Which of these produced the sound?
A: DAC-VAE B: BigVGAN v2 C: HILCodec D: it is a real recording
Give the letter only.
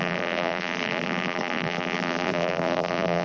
B